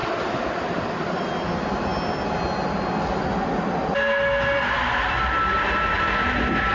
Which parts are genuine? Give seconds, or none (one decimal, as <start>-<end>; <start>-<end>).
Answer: 1.2-6.7